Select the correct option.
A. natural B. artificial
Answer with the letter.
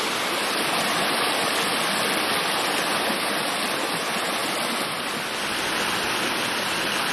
A